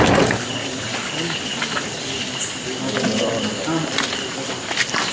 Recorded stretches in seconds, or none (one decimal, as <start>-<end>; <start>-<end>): 0.0-5.1